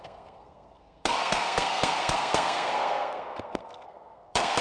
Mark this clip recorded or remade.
remade